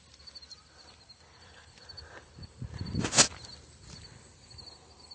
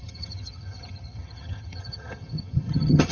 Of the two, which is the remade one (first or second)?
second